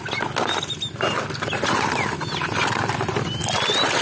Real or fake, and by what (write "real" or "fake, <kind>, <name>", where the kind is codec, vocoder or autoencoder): real